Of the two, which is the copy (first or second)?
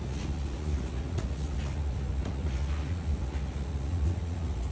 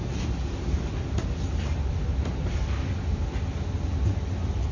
first